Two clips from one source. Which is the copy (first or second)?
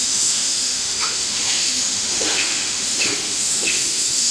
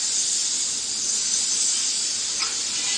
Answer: first